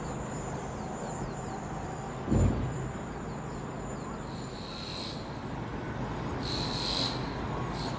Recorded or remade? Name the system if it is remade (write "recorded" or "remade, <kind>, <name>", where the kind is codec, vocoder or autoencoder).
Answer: recorded